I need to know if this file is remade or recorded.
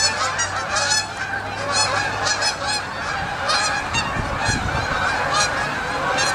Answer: recorded